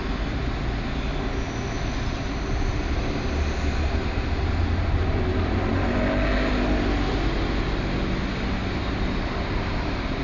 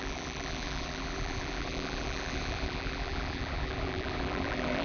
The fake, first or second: second